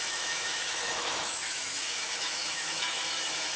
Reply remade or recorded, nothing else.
remade